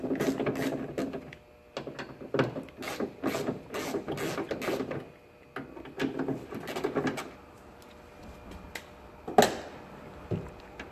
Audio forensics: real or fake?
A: real